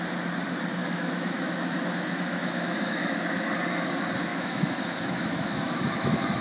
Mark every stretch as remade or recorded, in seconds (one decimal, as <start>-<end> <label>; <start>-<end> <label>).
0.0-0.8 recorded; 0.8-3.5 remade; 3.5-4.3 recorded; 4.3-6.4 remade